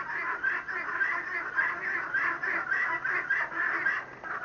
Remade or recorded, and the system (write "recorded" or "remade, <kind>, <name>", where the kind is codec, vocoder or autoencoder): recorded